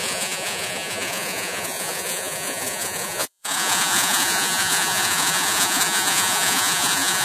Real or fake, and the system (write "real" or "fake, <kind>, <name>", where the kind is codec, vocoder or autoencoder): fake, vocoder, Vocos